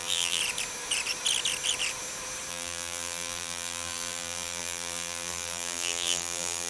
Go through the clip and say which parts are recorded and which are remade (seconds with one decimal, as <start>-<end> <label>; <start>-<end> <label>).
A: 0.0-0.4 remade; 0.4-2.5 recorded; 2.5-6.7 remade